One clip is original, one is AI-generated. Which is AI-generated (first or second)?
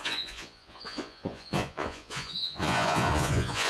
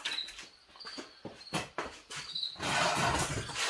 first